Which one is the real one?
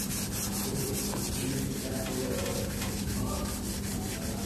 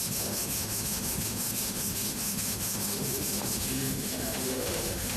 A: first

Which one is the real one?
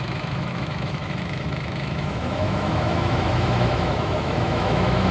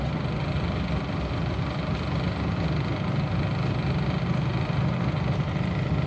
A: second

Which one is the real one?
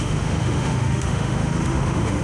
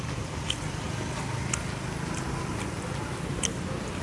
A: second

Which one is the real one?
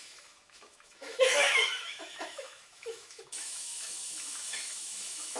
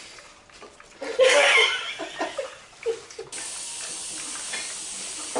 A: second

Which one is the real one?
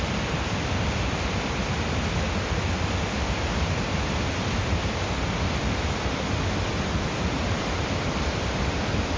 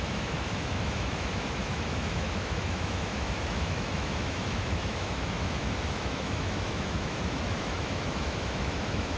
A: first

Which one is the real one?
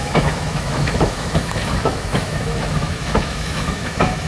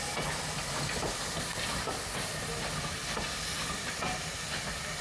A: second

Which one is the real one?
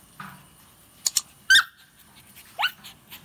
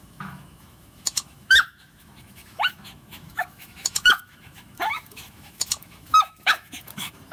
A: first